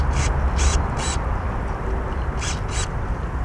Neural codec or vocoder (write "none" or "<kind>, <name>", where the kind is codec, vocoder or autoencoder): none